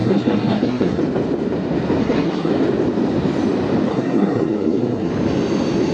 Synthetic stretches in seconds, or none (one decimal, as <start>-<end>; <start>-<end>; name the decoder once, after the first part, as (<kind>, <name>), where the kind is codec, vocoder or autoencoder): 0.0-1.0 (codec, SNAC); 2.0-2.5; 3.9-5.1